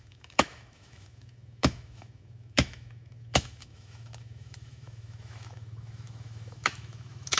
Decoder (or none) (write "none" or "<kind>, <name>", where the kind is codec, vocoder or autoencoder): autoencoder, DAC-VAE